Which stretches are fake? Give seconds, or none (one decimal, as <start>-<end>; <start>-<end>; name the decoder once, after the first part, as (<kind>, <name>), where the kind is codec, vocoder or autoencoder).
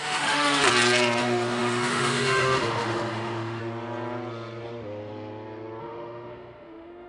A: 0.0-0.6 (autoencoder, DAC-VAE); 1.2-3.6; 5.8-7.1